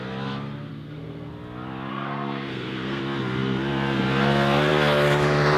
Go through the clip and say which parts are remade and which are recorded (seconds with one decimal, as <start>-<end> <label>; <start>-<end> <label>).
0.0-0.7 recorded; 0.7-1.3 remade; 1.3-1.9 recorded; 1.9-3.0 remade; 3.0-5.6 recorded